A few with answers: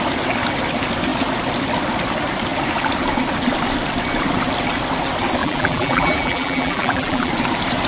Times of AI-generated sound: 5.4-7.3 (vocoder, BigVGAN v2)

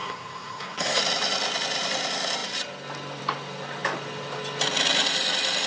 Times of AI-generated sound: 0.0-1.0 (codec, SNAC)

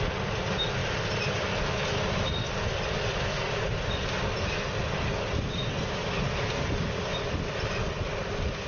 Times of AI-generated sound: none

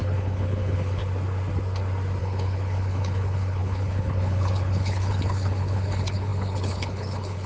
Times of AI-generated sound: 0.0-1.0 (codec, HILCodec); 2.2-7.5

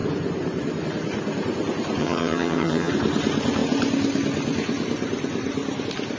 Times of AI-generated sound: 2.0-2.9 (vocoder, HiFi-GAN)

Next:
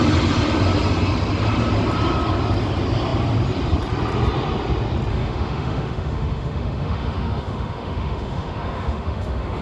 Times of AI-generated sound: 5.1-9.6 (autoencoder, DAC-VAE)